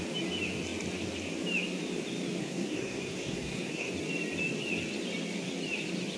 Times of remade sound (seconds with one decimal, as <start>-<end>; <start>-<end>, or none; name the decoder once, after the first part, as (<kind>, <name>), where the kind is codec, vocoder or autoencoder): 2.4-3.9 (codec, SNAC)